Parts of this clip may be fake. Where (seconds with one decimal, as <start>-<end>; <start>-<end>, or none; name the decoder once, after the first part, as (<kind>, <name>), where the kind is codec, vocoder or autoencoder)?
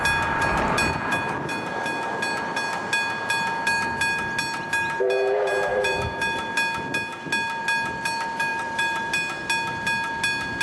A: 5.7-6.5 (vocoder, BigVGAN v2); 8.5-9.1